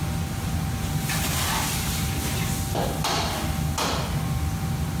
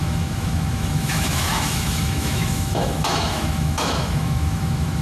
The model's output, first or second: second